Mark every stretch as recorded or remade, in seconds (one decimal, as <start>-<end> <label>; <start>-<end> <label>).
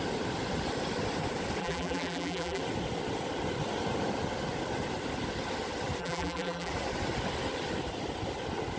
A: 0.0-1.6 recorded; 1.6-2.6 remade; 2.6-6.0 recorded; 6.0-6.7 remade; 6.7-8.8 recorded